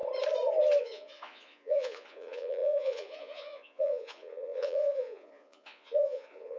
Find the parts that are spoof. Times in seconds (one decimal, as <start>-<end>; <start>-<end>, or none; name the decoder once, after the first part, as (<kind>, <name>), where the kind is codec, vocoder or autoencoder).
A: 0.8-6.6 (vocoder, Vocos)